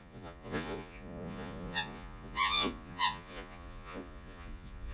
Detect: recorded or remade remade